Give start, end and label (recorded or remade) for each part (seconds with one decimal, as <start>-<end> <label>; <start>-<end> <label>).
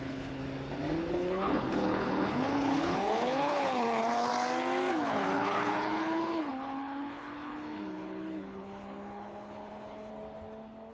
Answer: 0.0-0.4 remade; 0.4-1.1 recorded; 1.1-4.3 remade; 4.3-4.9 recorded; 4.9-10.1 remade; 10.1-10.9 recorded